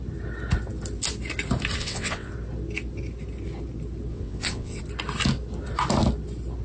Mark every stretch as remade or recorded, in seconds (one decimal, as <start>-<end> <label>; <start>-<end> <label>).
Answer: 0.0-1.8 recorded; 1.8-2.3 remade; 2.3-4.1 recorded; 4.1-4.8 remade; 4.8-6.6 recorded